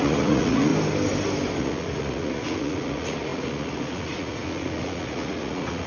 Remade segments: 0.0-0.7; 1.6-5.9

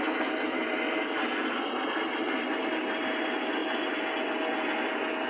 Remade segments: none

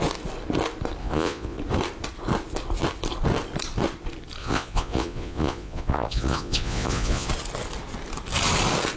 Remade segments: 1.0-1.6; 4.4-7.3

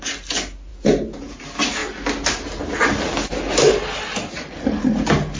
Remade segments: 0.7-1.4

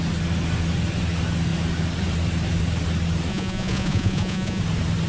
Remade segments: 3.3-4.6